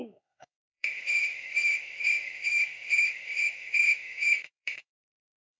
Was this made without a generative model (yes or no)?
no